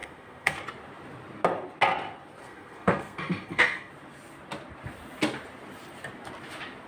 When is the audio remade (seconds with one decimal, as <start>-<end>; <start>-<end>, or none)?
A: 0.0-0.6; 2.4-3.9